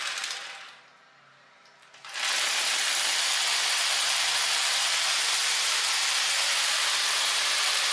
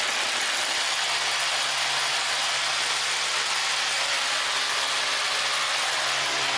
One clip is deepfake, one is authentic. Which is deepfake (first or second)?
first